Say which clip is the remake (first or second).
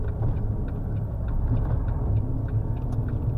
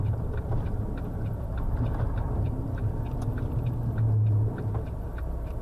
second